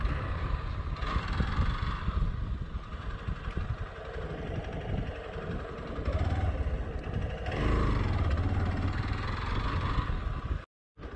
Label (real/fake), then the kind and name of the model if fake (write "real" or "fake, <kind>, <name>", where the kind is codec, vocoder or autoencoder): real